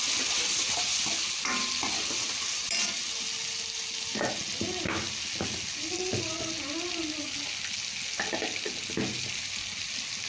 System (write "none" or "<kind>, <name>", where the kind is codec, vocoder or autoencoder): none